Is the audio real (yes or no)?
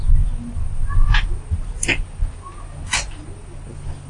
yes